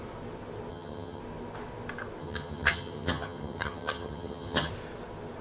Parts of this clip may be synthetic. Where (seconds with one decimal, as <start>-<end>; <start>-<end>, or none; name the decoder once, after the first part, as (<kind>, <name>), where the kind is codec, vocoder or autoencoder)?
0.7-1.2 (vocoder, HiFi-GAN); 2.2-4.7